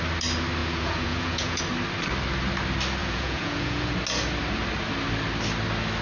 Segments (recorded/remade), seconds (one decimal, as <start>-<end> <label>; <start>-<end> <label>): 0.0-0.6 recorded; 0.6-1.6 remade; 1.6-3.0 recorded; 3.0-3.9 remade; 3.9-6.0 recorded